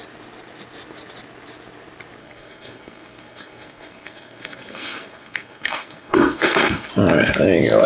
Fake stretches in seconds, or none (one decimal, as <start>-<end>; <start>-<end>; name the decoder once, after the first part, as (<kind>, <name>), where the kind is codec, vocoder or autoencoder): 2.2-6.9 (codec, SNAC)